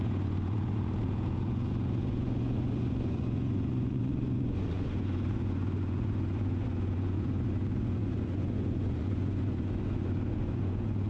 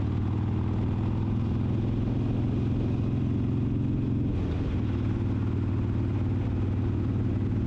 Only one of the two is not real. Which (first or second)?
first